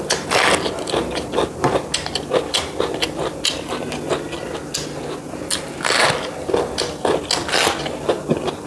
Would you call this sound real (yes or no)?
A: yes